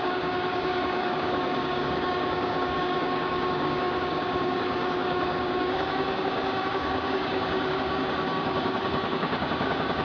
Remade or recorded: remade